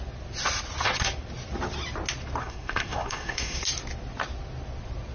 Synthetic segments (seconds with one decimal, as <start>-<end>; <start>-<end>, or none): 2.4-3.6